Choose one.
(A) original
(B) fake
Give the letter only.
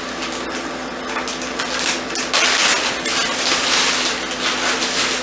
A